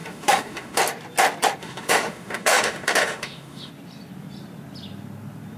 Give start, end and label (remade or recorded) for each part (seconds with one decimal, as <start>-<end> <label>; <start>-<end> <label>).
0.0-0.8 remade; 0.8-1.6 recorded; 1.6-3.7 remade; 3.7-5.6 recorded